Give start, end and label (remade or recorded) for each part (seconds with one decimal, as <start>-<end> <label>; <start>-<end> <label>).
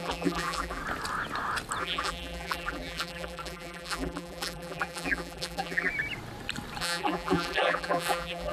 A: 0.0-0.8 remade; 0.8-1.8 recorded; 1.8-5.9 remade; 5.9-6.8 recorded; 6.8-8.5 remade